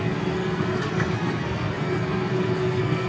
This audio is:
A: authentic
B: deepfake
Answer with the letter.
B